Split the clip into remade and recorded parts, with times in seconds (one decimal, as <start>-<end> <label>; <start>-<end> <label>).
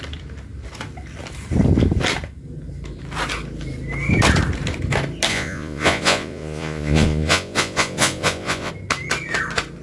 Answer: 0.0-5.3 recorded; 5.3-8.7 remade; 8.7-9.8 recorded